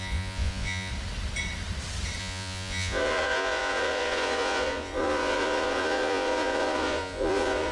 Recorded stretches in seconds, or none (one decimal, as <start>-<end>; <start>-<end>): 0.9-2.2